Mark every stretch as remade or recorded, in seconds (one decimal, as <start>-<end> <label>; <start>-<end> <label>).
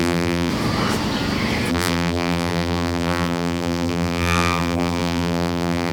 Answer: 0.0-0.5 remade; 0.5-1.7 recorded; 1.7-5.9 remade